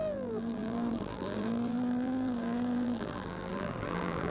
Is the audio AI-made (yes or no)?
yes